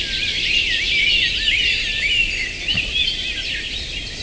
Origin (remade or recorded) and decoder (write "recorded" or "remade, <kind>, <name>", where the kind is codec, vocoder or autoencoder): recorded